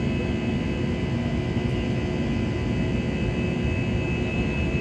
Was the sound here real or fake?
real